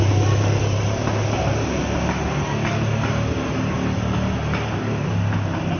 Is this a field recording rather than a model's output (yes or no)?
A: yes